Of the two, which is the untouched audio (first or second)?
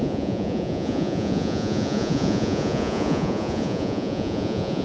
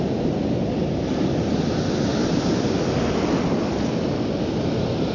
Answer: second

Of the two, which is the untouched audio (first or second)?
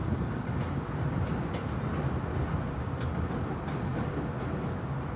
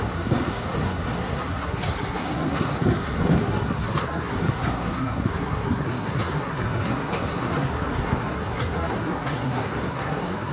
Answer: first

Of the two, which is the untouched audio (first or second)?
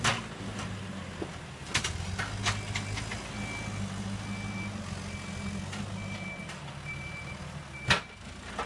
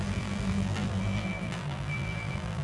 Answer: first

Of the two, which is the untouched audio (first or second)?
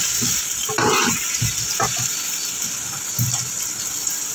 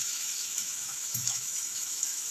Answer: first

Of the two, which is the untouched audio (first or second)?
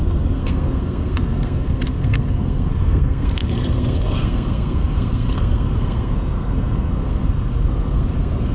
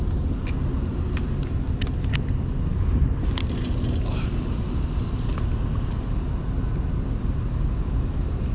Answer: second